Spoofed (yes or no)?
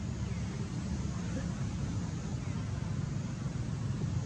no